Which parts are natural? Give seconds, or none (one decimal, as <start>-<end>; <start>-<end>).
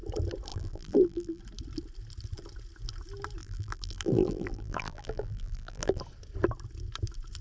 0.0-0.5; 1.4-3.4; 6.0-7.4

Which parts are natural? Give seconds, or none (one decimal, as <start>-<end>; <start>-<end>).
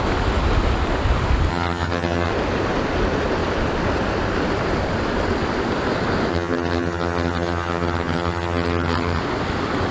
0.0-1.5; 2.3-6.3; 9.2-9.9